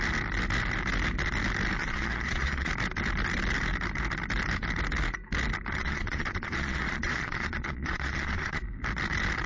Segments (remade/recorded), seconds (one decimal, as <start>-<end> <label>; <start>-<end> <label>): 0.0-1.8 recorded; 1.8-2.7 remade; 2.7-5.8 recorded; 5.8-8.6 remade; 8.6-9.5 recorded